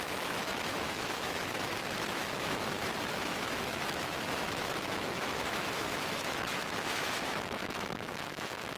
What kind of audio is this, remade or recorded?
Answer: remade